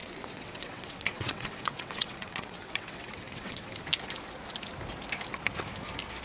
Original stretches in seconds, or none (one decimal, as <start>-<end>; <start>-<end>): 3.7-6.2